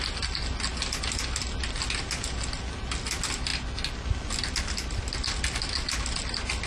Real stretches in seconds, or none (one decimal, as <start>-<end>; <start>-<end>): 0.0-6.7